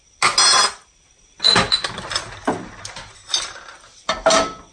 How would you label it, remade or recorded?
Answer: recorded